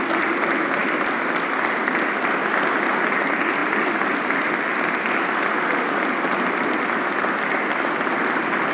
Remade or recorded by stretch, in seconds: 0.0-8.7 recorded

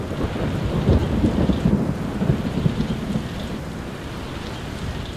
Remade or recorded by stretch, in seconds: 0.0-5.2 recorded

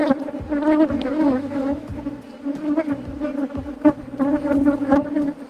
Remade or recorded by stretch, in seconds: 0.0-1.1 recorded; 1.1-1.9 remade; 1.9-5.5 recorded

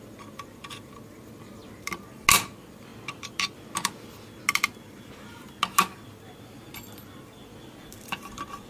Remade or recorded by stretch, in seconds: 0.0-8.7 recorded

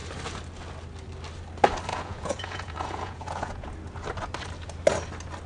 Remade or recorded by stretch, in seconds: 0.0-1.9 recorded; 1.9-3.7 remade; 3.7-5.5 recorded